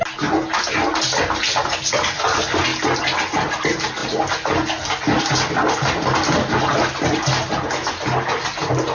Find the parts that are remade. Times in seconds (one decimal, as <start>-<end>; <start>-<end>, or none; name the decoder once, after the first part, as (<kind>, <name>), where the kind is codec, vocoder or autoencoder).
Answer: none